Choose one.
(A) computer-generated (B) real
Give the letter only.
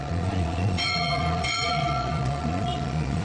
A